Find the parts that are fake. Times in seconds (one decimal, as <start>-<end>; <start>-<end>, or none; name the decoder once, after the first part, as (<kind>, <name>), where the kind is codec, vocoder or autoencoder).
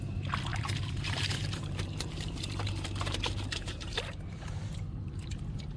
0.5-4.0 (vocoder, BigVGAN v2)